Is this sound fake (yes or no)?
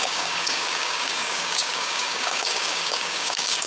yes